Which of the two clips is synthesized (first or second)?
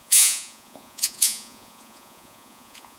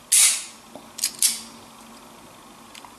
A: first